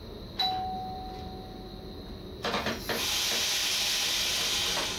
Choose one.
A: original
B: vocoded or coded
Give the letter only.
A